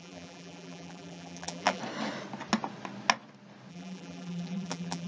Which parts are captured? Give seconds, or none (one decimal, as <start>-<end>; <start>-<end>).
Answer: 1.8-3.7

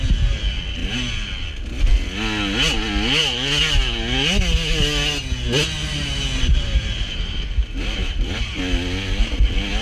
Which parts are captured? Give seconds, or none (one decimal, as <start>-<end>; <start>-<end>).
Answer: 0.0-5.8; 8.6-9.8

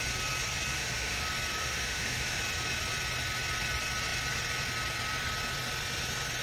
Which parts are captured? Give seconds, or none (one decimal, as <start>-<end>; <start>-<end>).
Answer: 0.0-0.7; 1.2-1.6; 2.4-6.4

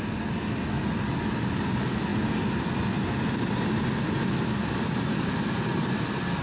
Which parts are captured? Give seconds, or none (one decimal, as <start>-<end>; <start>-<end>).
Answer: 0.0-6.4

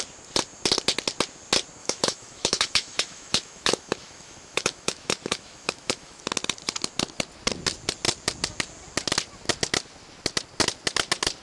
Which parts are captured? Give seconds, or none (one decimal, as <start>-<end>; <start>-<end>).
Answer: 0.0-1.8; 6.2-11.4

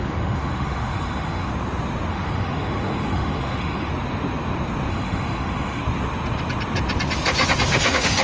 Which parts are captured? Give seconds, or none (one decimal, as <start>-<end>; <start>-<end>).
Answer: 1.5-2.1; 3.9-4.9; 5.8-7.7

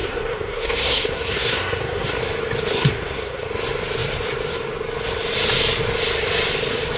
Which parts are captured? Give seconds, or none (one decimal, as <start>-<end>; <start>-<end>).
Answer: 2.2-2.7; 3.5-7.0